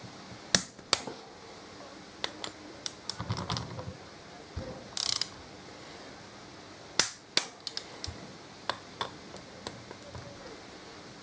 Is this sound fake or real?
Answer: real